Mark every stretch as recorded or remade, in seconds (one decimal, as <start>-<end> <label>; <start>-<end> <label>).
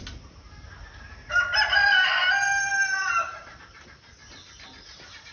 0.0-5.3 recorded